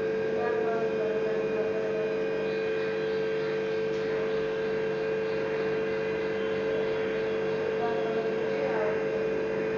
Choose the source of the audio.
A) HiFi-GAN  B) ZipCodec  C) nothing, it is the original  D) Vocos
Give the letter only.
C